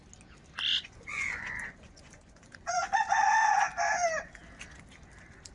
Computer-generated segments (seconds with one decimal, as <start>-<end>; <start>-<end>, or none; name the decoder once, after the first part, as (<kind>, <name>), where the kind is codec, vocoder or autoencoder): 0.7-3.6 (vocoder, Vocos)